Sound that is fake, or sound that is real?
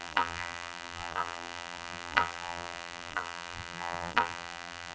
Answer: fake